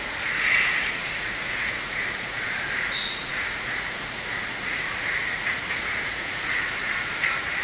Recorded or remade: remade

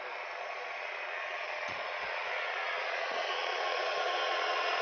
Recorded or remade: remade